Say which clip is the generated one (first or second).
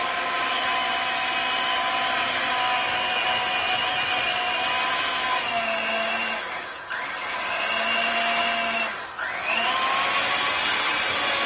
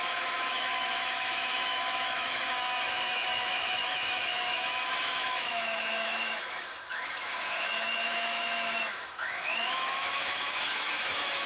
second